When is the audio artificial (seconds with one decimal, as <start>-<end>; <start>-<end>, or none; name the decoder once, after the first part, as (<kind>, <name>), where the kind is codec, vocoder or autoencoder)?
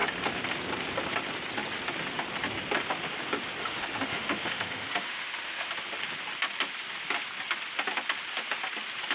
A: 3.6-5.7 (autoencoder, DAC-VAE)